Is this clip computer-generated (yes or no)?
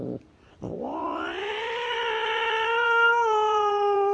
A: yes